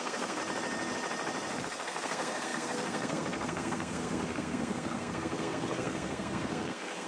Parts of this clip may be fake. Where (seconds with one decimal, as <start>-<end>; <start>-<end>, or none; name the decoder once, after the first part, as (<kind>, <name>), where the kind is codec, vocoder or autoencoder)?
0.0-0.4 (codec, SNAC); 1.6-7.1